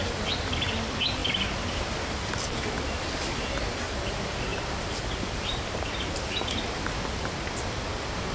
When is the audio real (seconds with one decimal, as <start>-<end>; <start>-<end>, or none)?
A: 0.0-8.3